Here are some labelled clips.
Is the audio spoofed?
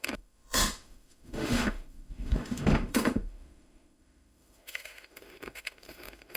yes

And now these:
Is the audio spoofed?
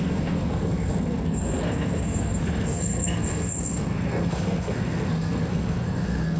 yes